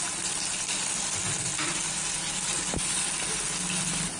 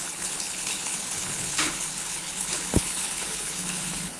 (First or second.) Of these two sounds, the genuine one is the first